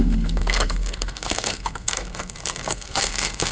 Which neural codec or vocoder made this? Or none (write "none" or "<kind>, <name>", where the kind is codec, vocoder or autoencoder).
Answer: codec, SNAC